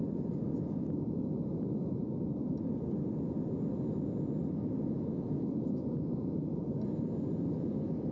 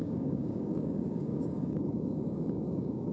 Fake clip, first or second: second